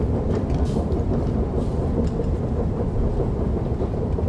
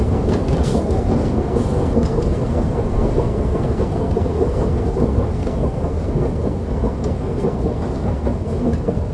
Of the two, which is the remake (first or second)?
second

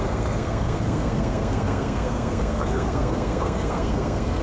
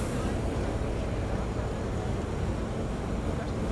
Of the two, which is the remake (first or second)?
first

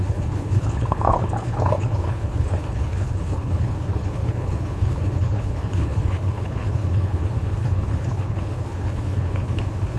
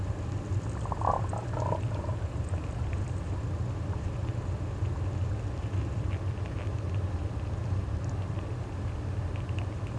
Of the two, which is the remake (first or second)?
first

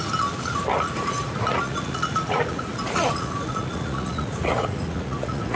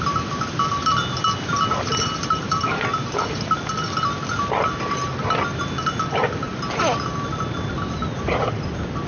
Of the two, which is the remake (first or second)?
first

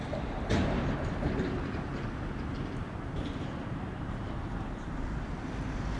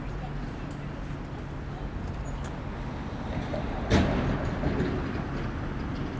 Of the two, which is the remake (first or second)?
first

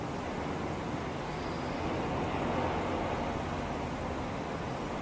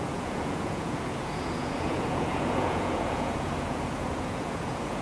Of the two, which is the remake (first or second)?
second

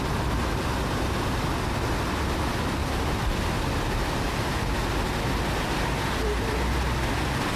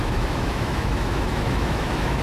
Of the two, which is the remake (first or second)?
second